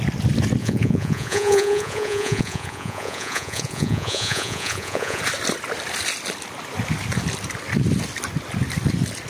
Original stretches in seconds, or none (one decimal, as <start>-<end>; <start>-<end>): 0.0-0.6; 5.2-9.3